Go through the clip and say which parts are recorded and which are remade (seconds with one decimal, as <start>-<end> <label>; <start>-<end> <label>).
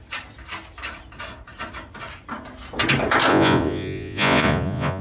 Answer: 0.0-3.3 recorded; 3.3-5.0 remade